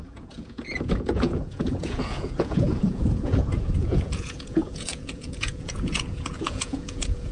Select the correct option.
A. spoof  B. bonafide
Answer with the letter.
A